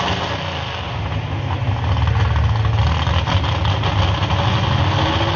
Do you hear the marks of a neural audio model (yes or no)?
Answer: no